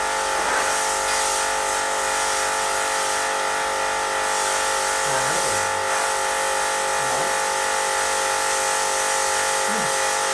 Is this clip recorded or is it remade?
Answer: recorded